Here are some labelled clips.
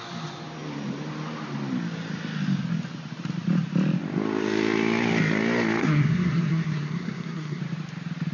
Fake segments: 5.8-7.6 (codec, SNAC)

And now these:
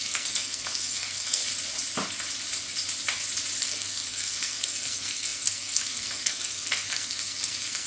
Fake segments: 0.0-1.4 (codec, SNAC); 3.6-7.9